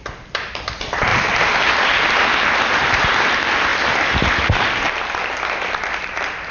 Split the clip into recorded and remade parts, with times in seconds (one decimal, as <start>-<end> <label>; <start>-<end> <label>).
0.0-1.1 remade; 1.1-2.9 recorded; 2.9-6.5 remade